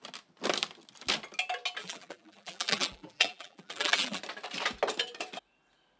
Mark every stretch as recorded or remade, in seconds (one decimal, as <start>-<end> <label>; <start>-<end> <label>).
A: 0.0-1.8 recorded; 1.8-4.2 remade; 4.2-6.0 recorded